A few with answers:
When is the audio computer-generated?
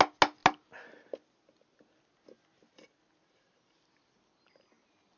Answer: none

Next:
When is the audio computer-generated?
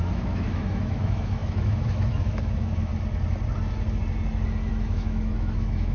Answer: 0.0-2.9 (autoencoder, DAC-VAE); 4.7-5.9